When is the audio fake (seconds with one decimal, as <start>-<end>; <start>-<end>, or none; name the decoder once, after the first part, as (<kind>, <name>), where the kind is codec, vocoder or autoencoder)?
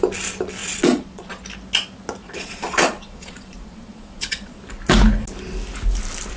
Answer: 0.6-1.4 (vocoder, Vocos); 2.2-4.6